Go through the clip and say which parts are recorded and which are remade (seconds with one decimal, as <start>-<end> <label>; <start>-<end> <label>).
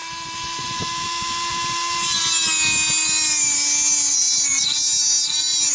0.0-2.2 remade; 2.2-4.1 recorded; 4.1-4.6 remade; 4.6-5.7 recorded